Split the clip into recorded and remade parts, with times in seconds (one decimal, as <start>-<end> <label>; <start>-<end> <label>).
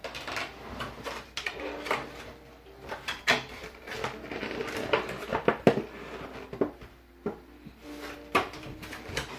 0.0-9.4 remade